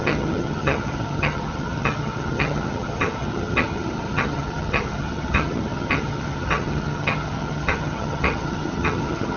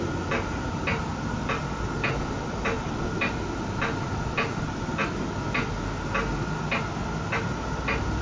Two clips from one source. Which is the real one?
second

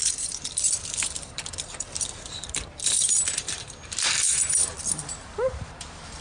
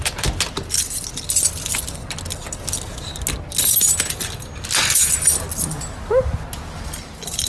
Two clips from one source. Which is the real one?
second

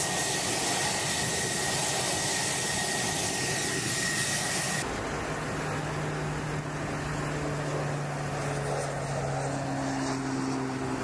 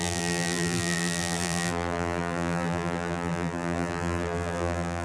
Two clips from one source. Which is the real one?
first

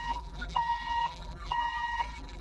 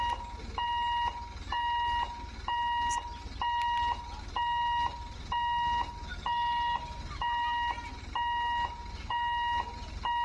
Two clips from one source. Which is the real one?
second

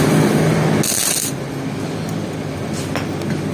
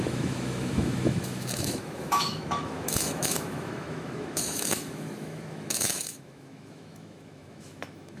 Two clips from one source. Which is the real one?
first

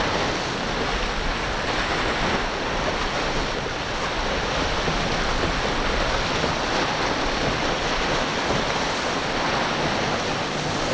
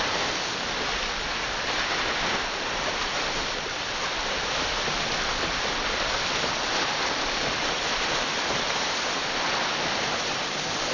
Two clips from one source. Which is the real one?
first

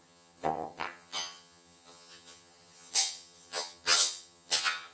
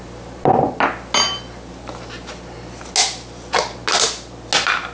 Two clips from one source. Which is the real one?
second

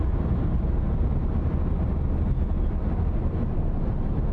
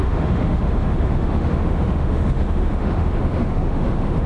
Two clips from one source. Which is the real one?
first